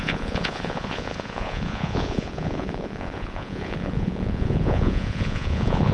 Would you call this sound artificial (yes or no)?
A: yes